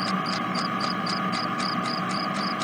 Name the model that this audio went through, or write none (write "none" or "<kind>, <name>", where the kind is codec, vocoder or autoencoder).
vocoder, BigVGAN v2